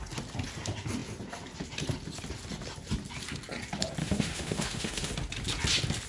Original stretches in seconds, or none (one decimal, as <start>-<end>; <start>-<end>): 0.0-4.0; 5.1-6.1